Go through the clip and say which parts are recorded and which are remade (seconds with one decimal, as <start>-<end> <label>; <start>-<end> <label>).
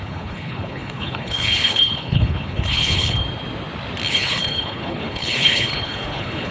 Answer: 0.0-3.2 remade; 3.2-4.1 recorded; 4.1-6.5 remade